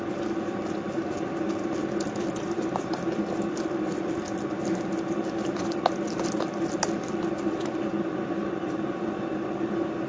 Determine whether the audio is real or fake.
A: real